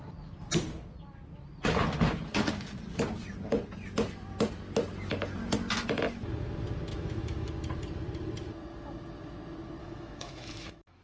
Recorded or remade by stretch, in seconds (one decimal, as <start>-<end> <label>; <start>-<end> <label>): 0.0-6.9 recorded; 6.9-7.5 remade; 7.5-9.8 recorded; 9.8-11.0 remade